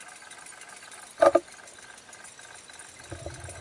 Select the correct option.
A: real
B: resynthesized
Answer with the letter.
A